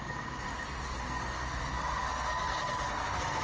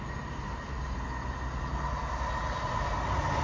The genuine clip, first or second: second